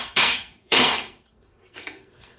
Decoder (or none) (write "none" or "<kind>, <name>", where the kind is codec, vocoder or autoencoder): codec, SNAC